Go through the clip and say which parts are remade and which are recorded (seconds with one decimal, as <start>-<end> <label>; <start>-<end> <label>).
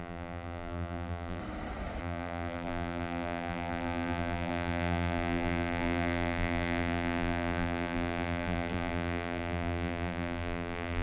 0.0-1.4 remade; 1.4-2.0 recorded; 2.0-11.0 remade